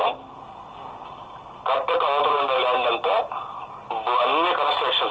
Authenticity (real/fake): real